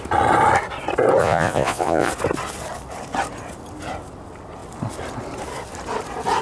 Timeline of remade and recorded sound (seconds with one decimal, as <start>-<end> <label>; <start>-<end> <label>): 0.0-1.2 recorded; 1.2-2.1 remade; 2.1-6.4 recorded